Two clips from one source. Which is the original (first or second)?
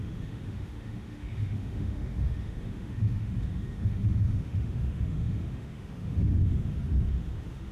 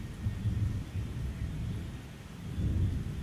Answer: second